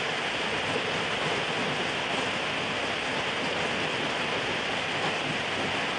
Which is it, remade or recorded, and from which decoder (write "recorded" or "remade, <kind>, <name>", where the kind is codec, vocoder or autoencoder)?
recorded